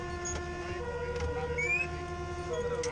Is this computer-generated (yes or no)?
no